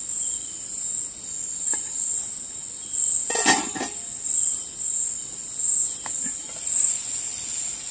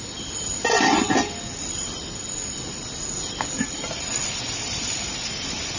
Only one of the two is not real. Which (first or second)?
second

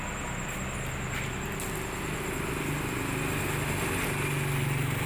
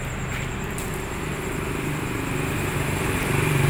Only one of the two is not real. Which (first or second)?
second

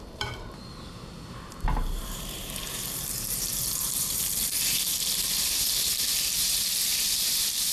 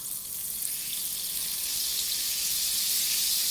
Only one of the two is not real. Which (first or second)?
first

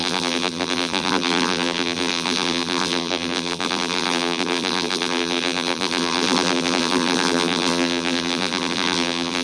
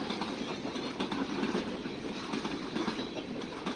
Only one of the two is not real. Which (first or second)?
first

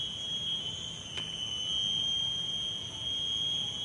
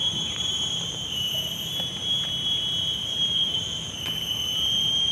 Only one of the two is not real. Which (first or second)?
second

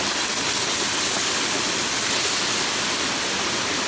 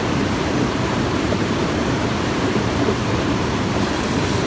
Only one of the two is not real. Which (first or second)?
second